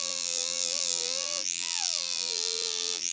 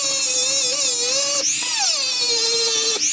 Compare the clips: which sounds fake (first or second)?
first